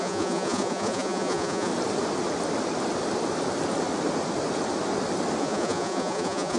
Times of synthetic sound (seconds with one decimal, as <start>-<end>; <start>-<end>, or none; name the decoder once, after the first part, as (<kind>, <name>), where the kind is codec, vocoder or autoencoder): 0.0-1.7 (vocoder, Vocos); 5.4-6.6